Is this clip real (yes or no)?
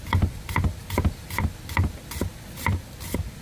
yes